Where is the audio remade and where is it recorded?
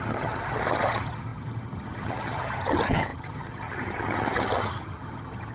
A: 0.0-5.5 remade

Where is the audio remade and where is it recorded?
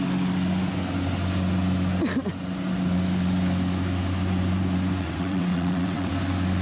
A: 0.0-5.0 recorded; 5.0-6.1 remade; 6.1-6.6 recorded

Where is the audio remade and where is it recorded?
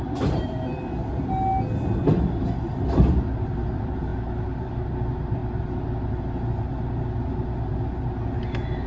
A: 0.0-1.0 remade; 1.0-1.8 recorded; 1.8-4.1 remade; 4.1-4.6 recorded; 4.6-5.4 remade; 5.4-8.9 recorded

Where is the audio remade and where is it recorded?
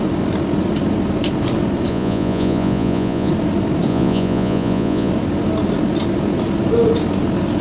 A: 0.0-1.9 recorded; 1.9-3.3 remade; 3.3-3.9 recorded; 3.9-5.1 remade; 5.1-7.6 recorded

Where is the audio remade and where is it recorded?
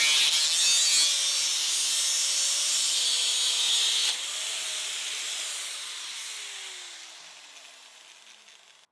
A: 0.0-2.2 recorded; 2.2-3.2 remade; 3.2-4.0 recorded; 4.0-6.4 remade; 6.4-8.9 recorded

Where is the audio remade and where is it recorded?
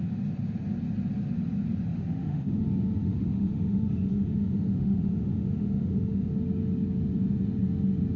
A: 0.0-1.9 recorded; 1.9-2.6 remade; 2.6-3.0 recorded; 3.0-6.3 remade; 6.3-8.2 recorded